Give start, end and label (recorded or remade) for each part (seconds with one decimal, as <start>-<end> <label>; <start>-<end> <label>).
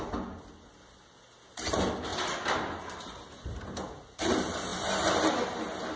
0.0-6.0 recorded